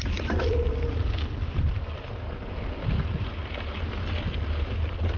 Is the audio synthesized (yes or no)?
no